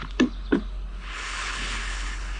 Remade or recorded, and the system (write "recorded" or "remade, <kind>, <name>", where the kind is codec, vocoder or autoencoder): remade, codec, HILCodec